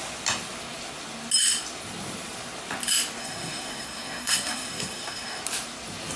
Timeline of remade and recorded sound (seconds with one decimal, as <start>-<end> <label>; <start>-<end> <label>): 0.0-3.2 recorded; 3.2-5.4 remade; 5.4-6.2 recorded